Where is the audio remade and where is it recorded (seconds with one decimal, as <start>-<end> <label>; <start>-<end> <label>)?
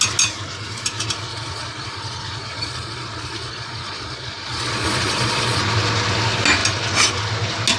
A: 0.0-1.3 recorded; 1.3-5.6 remade; 5.6-7.8 recorded